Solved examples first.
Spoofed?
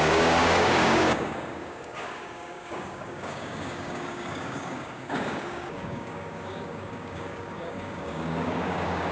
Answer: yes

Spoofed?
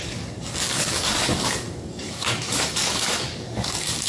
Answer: yes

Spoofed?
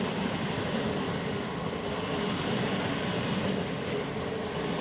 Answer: no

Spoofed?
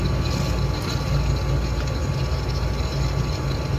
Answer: no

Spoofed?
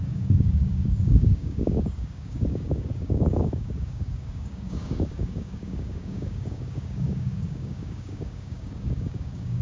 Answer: yes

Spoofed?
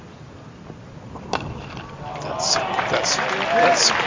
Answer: no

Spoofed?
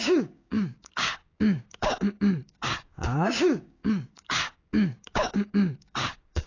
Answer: yes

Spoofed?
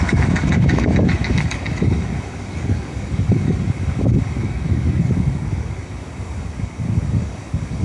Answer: yes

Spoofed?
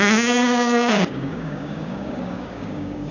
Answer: yes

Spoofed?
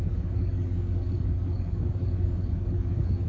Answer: yes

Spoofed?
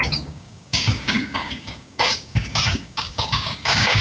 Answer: yes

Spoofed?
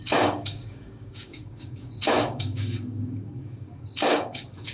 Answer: yes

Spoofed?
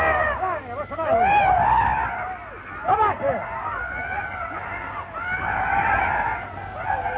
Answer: no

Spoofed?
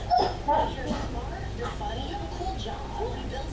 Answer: no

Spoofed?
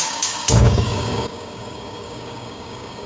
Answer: yes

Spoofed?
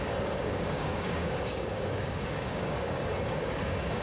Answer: yes